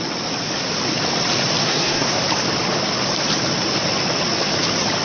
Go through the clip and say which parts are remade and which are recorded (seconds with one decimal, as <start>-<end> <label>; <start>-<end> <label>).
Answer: 0.0-1.6 recorded; 1.6-2.2 remade; 2.2-5.0 recorded